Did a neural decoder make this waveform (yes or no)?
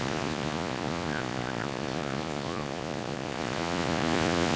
yes